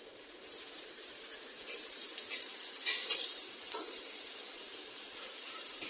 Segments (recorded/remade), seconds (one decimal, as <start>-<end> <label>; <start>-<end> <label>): 0.0-2.1 remade; 2.1-4.5 recorded; 4.5-5.9 remade